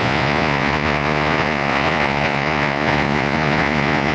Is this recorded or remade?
remade